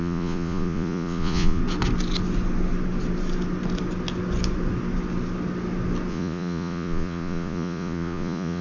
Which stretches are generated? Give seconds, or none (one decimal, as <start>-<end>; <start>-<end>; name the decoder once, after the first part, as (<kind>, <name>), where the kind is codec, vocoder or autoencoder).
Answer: 0.0-1.6 (vocoder, Vocos); 6.1-8.6